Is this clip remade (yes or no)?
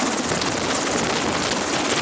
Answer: no